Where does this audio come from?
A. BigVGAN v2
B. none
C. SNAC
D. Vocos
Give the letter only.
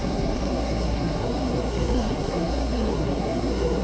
C